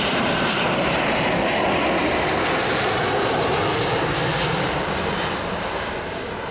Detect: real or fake real